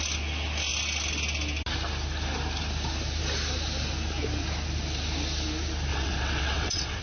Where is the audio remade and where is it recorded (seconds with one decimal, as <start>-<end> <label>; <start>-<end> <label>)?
0.0-5.9 recorded; 5.9-7.0 remade